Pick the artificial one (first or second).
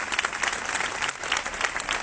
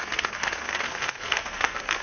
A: second